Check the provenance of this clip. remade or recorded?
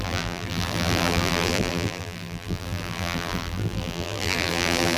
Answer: remade